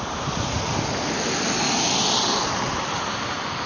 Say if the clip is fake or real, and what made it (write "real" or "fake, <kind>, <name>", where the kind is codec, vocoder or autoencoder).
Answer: real